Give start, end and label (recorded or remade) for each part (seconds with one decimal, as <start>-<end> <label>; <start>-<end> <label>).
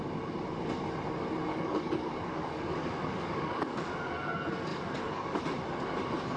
0.0-1.5 recorded; 1.5-4.1 remade; 4.1-4.7 recorded; 4.7-5.4 remade; 5.4-6.4 recorded